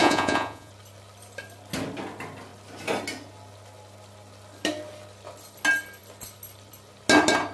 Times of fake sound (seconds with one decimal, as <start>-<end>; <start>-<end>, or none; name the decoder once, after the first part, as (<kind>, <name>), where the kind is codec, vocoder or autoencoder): 0.0-0.7 (vocoder, Vocos)